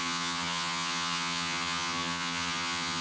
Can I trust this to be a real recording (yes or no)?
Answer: no